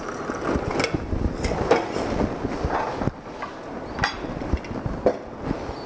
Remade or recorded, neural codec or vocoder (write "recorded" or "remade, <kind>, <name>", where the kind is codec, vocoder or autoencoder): recorded